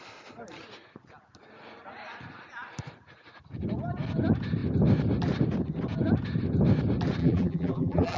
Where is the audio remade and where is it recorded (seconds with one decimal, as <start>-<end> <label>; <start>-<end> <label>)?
0.0-7.2 recorded; 7.2-8.2 remade